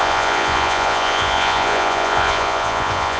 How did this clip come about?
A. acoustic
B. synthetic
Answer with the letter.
B